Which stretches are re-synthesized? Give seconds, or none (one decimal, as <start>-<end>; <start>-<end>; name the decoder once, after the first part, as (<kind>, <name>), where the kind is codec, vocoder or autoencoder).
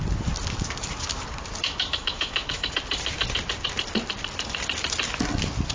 1.6-2.7 (autoencoder, DAC-VAE)